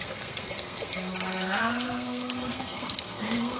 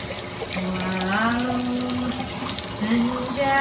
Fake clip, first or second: first